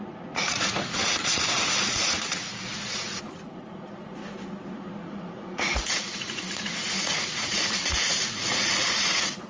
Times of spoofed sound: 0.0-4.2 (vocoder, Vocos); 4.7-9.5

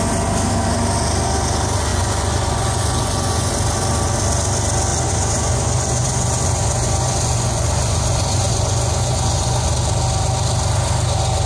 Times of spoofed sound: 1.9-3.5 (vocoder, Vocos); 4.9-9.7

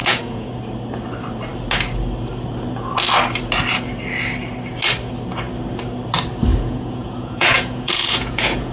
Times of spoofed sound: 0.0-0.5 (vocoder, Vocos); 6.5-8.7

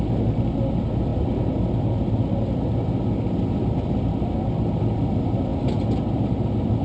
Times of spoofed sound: none

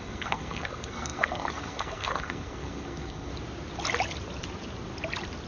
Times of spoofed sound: 0.0-3.3 (codec, SNAC)

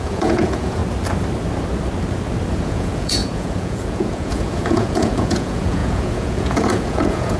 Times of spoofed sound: 0.0-0.8 (vocoder, Vocos); 2.5-7.4

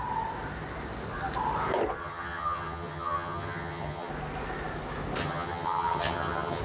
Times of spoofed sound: 2.0-4.1 (vocoder, HiFi-GAN); 5.2-6.6